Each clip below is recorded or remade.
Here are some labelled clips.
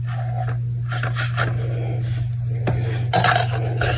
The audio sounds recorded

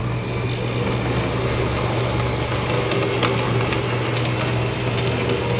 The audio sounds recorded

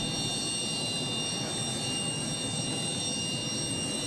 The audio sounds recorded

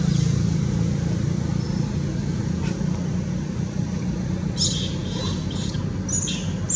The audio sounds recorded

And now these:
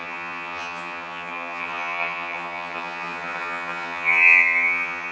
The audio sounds remade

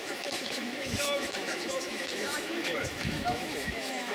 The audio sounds remade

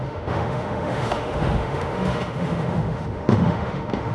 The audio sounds remade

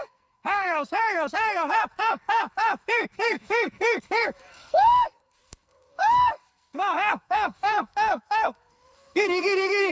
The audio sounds remade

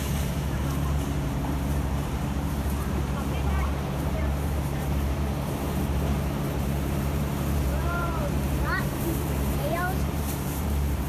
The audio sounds remade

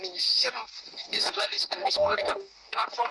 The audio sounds remade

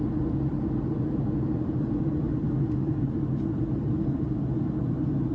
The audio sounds recorded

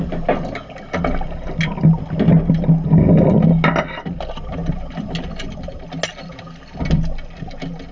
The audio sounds recorded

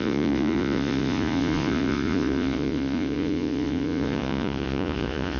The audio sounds remade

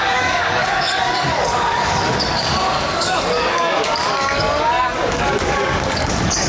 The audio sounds remade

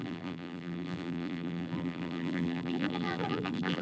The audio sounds remade